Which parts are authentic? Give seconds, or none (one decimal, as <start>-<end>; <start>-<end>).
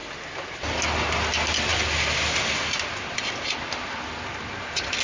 0.0-5.0